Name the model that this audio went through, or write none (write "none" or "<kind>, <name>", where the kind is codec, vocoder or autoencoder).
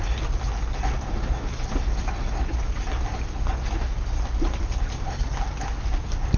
none